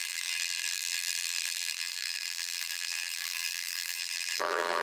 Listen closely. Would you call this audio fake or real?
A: fake